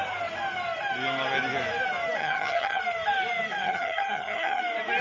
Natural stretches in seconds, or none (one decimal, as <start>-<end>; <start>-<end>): 0.0-2.2; 2.8-3.6; 4.6-5.0